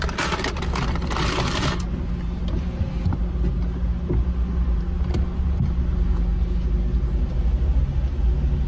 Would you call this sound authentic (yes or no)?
yes